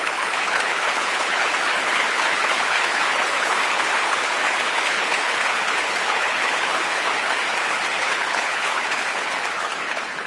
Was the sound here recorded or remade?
remade